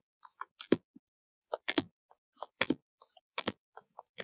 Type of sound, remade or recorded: remade